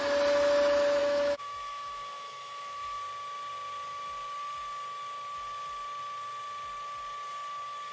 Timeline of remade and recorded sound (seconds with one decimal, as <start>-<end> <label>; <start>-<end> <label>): 0.0-1.0 recorded; 1.0-3.0 remade; 3.0-7.9 recorded